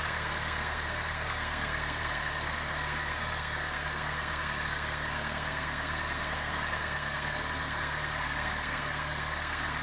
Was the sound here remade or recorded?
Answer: remade